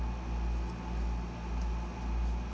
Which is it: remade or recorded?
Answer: recorded